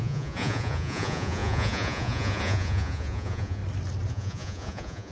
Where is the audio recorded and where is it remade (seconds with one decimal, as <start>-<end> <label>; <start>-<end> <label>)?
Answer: 0.0-3.6 remade; 3.6-4.1 recorded; 4.1-5.1 remade